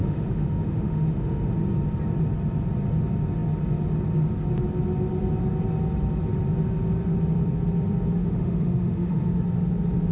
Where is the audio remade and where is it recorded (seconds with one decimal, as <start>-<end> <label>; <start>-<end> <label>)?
0.0-1.5 remade; 1.5-8.2 recorded; 8.2-9.4 remade; 9.4-10.1 recorded